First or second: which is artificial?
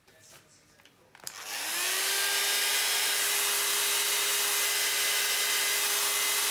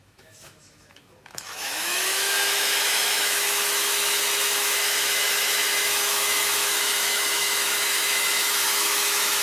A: second